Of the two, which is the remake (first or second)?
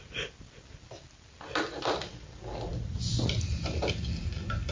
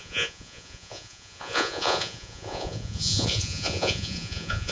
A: second